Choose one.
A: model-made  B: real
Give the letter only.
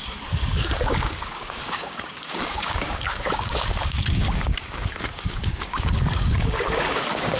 A